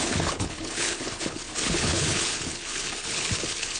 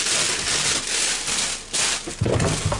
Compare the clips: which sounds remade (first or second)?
first